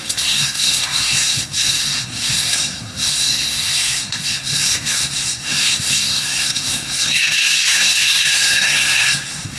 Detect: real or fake fake